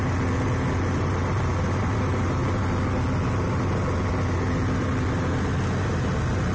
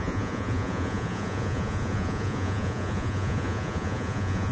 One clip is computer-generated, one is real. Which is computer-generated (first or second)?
second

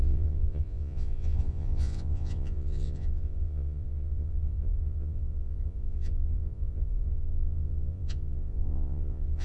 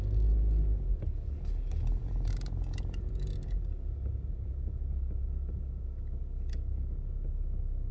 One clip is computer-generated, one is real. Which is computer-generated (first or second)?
first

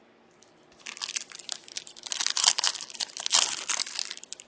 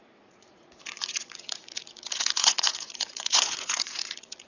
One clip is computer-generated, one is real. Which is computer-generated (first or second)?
second